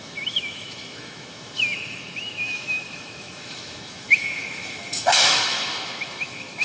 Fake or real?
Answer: fake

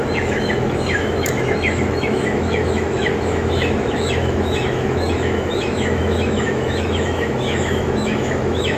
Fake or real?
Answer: fake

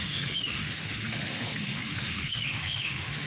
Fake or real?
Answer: fake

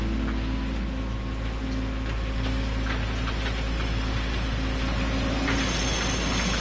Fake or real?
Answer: real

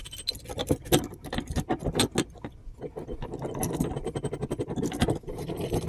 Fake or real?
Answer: real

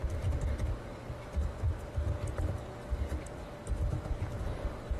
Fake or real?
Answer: real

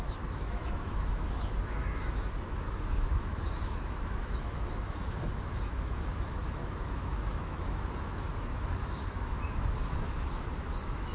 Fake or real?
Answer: fake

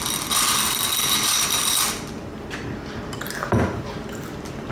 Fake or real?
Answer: real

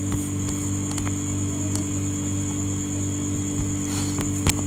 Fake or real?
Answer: real